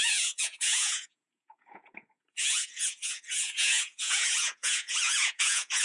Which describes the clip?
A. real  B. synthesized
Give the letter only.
B